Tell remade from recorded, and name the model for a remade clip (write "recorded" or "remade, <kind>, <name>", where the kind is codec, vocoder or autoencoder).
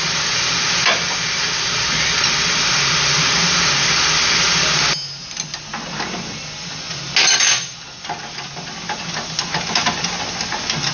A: recorded